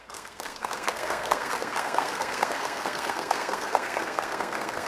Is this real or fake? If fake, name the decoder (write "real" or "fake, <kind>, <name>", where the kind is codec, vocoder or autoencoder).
fake, codec, SNAC